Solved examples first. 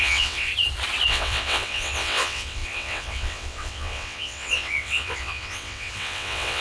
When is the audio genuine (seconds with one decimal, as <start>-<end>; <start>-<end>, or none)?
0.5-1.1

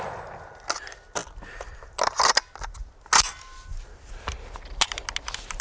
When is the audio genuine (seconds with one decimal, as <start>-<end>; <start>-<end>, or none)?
0.0-5.6

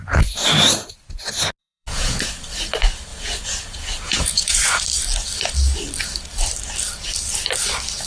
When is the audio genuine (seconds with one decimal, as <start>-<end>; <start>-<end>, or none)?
0.0-1.6; 2.2-3.1; 4.8-8.1